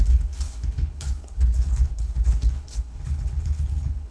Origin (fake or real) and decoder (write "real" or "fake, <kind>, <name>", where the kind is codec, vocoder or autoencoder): fake, codec, HILCodec